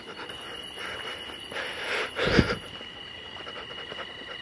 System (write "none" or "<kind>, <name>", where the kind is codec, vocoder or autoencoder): none